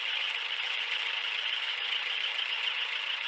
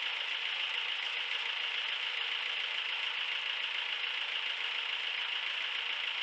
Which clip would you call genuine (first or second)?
second